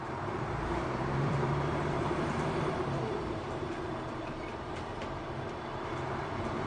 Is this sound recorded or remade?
remade